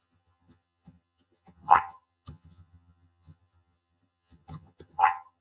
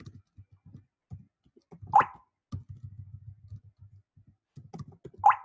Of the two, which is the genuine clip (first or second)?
second